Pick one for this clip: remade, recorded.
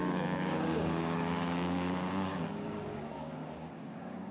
remade